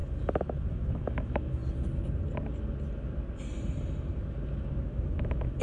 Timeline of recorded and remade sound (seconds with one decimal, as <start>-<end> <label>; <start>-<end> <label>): 0.0-0.7 recorded; 0.7-1.6 remade; 1.6-4.8 recorded; 4.8-5.6 remade